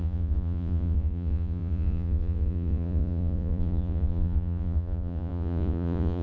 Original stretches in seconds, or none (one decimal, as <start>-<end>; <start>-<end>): none